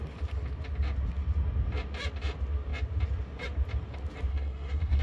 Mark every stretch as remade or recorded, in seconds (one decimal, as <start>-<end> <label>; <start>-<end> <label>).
0.0-4.3 recorded; 4.3-5.0 remade